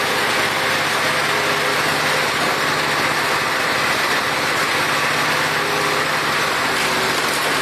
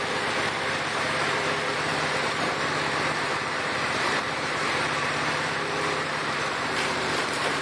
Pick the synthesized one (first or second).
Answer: second